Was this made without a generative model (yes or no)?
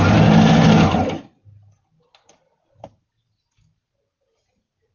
yes